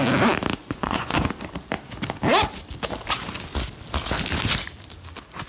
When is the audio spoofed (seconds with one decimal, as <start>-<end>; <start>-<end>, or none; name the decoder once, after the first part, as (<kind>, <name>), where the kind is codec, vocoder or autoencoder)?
0.6-1.3 (vocoder, Vocos)